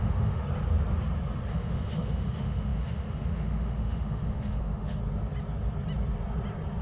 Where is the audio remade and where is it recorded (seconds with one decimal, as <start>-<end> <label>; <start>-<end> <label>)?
0.0-0.4 remade; 0.4-1.5 recorded; 1.5-5.0 remade; 5.0-6.8 recorded